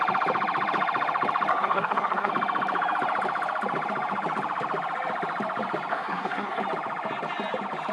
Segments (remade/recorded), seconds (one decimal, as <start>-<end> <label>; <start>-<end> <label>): 0.0-1.5 recorded; 1.5-2.3 remade; 2.3-5.9 recorded; 5.9-6.6 remade; 6.6-7.9 recorded